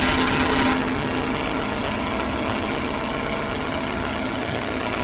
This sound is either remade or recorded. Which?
remade